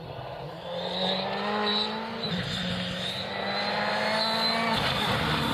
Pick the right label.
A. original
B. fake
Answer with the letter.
A